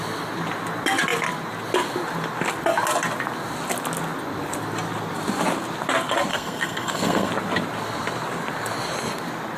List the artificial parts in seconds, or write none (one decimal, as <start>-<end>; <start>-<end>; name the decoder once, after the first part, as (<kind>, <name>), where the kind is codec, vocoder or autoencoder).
6.3-7.3 (codec, SNAC)